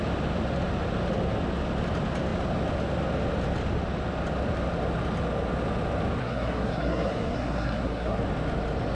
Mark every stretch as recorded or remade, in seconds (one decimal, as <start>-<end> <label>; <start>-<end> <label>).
0.0-6.2 recorded; 6.2-8.2 remade; 8.2-8.9 recorded